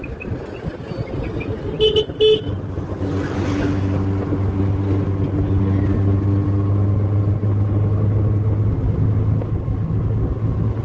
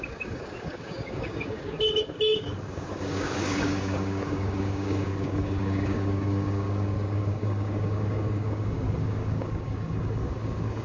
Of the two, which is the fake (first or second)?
second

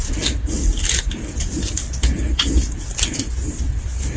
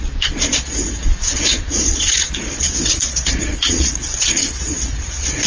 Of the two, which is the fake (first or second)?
second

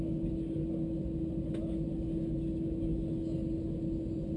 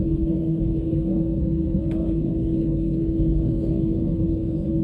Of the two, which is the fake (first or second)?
second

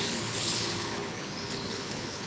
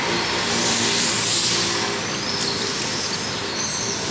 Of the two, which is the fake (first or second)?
first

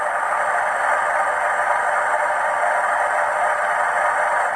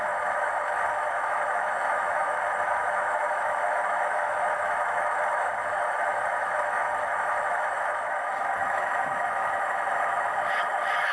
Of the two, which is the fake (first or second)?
second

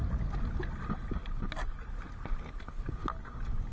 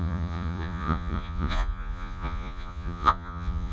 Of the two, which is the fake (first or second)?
second